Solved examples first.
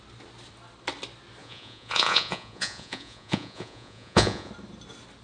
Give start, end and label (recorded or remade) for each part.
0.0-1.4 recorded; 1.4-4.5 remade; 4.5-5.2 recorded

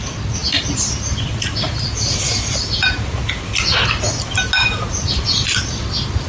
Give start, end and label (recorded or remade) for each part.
0.0-6.3 recorded

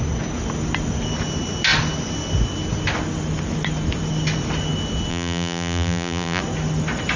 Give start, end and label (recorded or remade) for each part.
0.0-5.1 recorded; 5.1-6.4 remade; 6.4-7.2 recorded

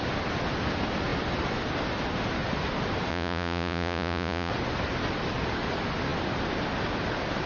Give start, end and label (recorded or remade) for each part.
0.0-3.1 recorded; 3.1-4.5 remade; 4.5-7.5 recorded

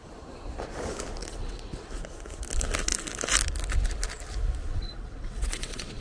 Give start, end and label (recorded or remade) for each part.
0.0-1.2 recorded; 1.2-1.9 remade; 1.9-4.7 recorded; 4.7-6.0 remade

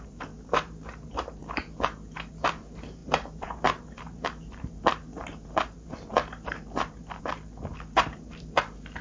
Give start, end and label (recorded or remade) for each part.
0.0-1.4 remade; 1.4-2.3 recorded; 2.3-9.0 remade

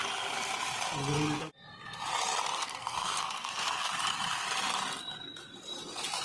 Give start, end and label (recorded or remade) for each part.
0.0-2.5 recorded; 2.5-3.9 remade; 3.9-6.2 recorded

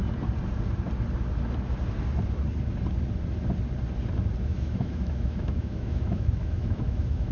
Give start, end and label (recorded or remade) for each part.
0.0-4.4 recorded; 4.4-7.3 remade